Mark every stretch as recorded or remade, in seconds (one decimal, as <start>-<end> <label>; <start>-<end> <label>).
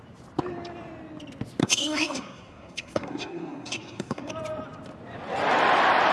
0.0-1.6 recorded; 1.6-4.3 remade; 4.3-6.1 recorded